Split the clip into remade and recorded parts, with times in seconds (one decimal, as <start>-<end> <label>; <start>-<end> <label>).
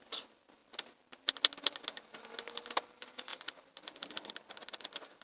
0.0-5.2 recorded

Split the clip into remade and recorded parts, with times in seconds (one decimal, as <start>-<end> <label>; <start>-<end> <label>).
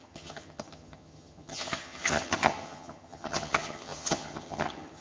0.0-5.0 remade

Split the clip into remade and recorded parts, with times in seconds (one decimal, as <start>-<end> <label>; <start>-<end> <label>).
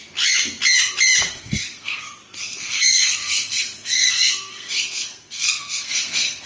0.0-1.3 recorded; 1.3-2.0 remade; 2.0-2.4 recorded; 2.4-6.5 remade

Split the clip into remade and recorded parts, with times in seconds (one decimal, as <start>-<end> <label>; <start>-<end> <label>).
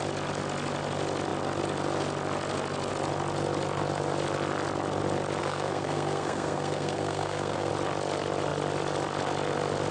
0.0-5.4 recorded; 5.4-7.7 remade; 7.7-9.9 recorded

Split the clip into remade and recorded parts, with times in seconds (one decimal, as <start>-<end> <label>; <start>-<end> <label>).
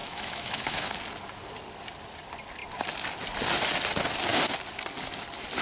0.0-0.9 remade; 0.9-5.6 recorded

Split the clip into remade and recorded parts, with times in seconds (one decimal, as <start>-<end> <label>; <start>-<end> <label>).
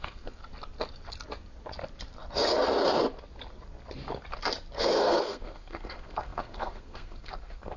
0.0-0.4 remade; 0.4-4.8 recorded; 4.8-7.8 remade